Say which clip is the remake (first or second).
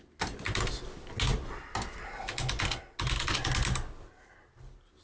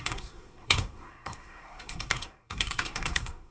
second